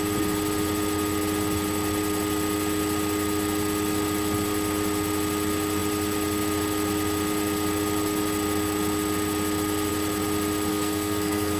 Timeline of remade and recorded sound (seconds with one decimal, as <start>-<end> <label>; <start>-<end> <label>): 0.0-10.7 recorded; 10.7-11.6 remade